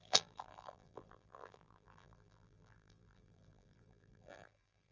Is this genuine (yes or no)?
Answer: no